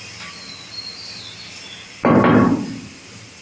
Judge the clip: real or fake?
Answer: real